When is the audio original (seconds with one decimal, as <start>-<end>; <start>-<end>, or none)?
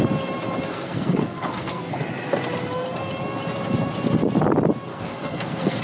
0.0-0.7; 1.9-4.9